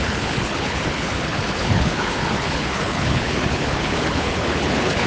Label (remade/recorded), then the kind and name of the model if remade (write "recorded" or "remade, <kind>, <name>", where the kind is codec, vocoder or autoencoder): remade, codec, HILCodec